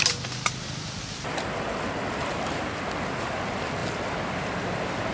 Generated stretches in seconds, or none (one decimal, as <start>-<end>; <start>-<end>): none